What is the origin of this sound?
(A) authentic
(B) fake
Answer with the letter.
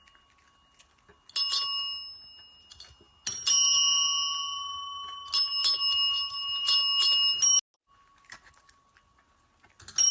A